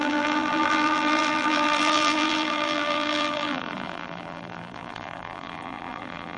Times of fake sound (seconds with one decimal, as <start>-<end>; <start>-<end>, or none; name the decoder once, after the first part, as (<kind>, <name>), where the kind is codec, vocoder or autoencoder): 0.0-6.4 (vocoder, BigVGAN v2)